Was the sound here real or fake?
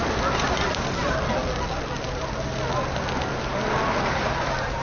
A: real